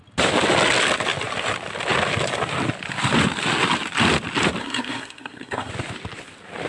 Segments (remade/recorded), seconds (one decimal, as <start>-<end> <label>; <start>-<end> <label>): 0.0-4.6 recorded; 4.6-5.7 remade; 5.7-6.7 recorded